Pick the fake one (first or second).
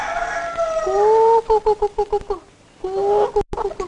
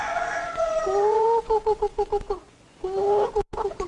second